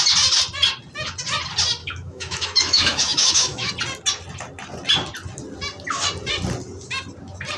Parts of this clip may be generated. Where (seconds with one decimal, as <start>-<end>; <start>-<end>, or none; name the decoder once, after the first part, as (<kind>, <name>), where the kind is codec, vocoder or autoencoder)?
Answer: 1.8-3.7 (autoencoder, DAC-VAE)